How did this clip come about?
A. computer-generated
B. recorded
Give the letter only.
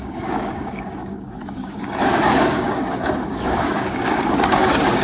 A